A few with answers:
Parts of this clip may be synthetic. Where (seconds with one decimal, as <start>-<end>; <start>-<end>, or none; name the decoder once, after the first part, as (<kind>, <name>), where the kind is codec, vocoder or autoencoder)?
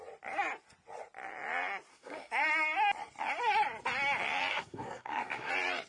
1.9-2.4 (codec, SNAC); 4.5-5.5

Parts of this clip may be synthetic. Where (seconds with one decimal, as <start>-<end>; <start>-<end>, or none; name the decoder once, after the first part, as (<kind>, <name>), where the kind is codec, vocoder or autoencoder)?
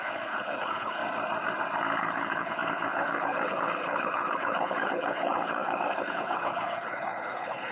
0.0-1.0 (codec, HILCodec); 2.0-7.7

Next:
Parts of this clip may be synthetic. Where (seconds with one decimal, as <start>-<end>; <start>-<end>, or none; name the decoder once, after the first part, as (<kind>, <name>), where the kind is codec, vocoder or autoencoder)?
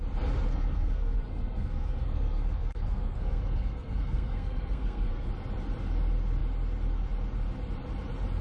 0.5-5.3 (codec, SNAC)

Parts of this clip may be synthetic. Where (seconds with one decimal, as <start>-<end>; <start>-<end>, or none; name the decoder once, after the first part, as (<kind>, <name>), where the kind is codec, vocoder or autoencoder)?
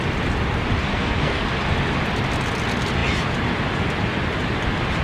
0.9-1.4 (codec, SNAC)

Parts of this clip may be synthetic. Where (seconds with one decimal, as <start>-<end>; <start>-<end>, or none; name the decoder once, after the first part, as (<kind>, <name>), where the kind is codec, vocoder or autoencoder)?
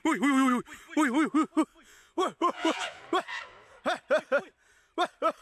1.7-3.0 (vocoder, Vocos)